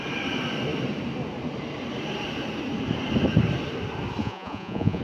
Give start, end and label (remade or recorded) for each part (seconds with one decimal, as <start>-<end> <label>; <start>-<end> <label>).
0.0-4.2 recorded; 4.2-5.0 remade